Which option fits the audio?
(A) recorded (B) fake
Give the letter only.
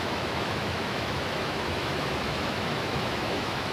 B